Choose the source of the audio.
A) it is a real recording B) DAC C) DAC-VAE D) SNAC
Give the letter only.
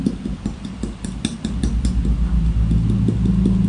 A